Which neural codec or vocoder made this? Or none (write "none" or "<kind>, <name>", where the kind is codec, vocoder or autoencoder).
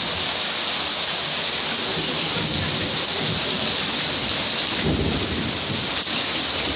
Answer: none